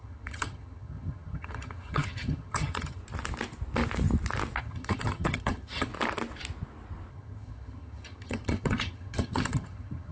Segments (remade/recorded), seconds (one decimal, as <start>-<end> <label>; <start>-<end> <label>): 0.0-3.0 remade; 3.0-4.6 recorded; 4.6-5.9 remade; 5.9-7.1 recorded; 7.1-10.1 remade